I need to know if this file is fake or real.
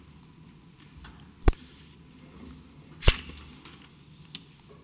real